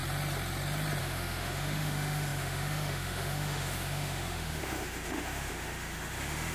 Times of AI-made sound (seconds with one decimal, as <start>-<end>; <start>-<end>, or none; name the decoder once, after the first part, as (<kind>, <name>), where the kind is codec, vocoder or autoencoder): 1.0-6.5 (autoencoder, DAC-VAE)